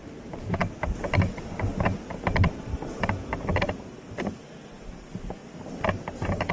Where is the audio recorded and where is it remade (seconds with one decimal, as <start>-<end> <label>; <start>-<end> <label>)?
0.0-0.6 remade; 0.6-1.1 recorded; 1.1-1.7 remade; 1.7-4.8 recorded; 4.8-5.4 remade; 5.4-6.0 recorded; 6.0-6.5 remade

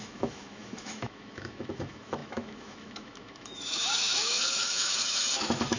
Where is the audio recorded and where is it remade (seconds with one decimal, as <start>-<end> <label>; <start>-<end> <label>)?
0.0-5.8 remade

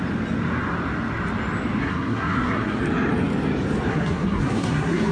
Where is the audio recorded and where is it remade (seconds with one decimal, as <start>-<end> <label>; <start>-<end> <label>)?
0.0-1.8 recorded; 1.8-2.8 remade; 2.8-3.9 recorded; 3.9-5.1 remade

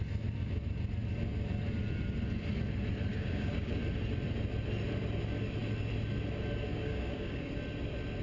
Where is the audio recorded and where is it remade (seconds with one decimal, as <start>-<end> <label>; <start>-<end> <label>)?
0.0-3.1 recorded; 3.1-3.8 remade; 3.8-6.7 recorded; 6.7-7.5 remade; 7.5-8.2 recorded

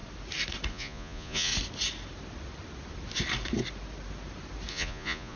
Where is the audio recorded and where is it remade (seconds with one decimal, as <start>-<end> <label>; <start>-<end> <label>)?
0.0-0.7 recorded; 0.7-1.5 remade; 1.5-4.7 recorded; 4.7-5.4 remade

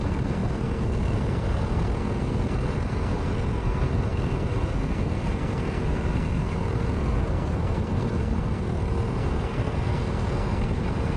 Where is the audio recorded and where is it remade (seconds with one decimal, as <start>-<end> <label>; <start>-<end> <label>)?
0.0-11.2 remade